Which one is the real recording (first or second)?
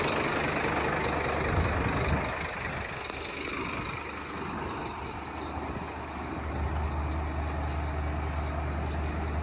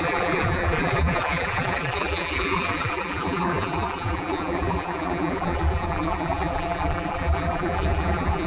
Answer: first